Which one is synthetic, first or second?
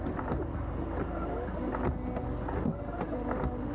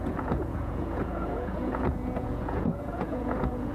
second